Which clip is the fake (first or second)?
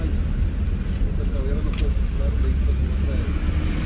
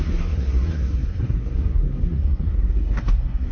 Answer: second